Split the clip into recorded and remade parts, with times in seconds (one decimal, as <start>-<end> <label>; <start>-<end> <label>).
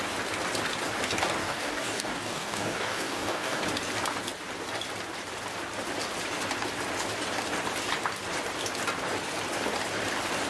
0.0-1.4 recorded; 1.4-3.6 remade; 3.6-10.5 recorded